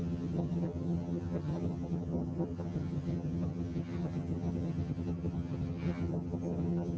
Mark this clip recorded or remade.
remade